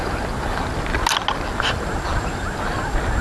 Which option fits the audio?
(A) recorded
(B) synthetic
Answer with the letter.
A